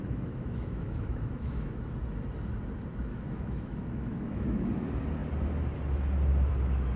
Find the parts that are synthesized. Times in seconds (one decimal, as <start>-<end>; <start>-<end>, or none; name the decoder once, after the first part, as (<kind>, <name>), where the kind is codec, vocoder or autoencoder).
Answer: 0.0-1.9 (autoencoder, DAC-VAE); 3.1-4.7

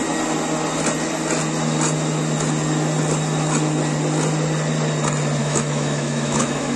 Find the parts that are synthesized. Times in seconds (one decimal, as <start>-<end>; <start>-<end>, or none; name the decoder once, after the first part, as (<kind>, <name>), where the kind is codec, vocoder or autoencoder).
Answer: 5.4-6.8 (autoencoder, DAC-VAE)